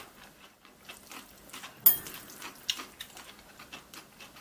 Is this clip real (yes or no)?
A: yes